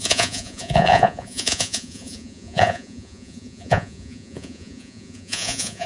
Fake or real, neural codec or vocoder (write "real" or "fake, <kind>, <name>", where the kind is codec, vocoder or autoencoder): fake, vocoder, Vocos